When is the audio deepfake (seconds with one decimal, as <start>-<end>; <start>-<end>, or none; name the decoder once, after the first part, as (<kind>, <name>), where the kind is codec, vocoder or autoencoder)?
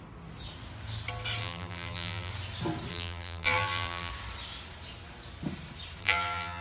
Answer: 1.4-2.3 (vocoder, BigVGAN v2); 2.9-4.1; 6.0-6.6